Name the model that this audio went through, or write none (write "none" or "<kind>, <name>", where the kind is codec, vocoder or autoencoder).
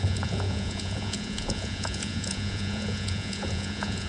vocoder, Vocos